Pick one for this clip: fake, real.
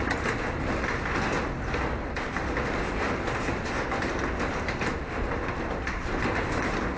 real